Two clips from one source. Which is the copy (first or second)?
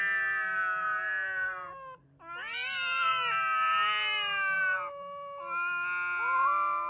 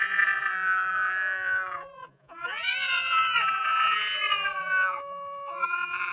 second